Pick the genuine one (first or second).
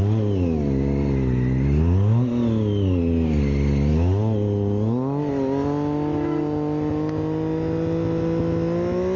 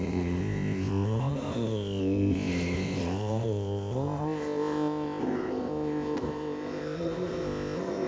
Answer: first